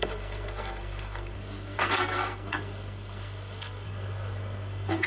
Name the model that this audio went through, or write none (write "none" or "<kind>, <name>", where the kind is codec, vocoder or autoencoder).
codec, SNAC